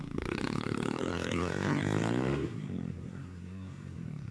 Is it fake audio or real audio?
fake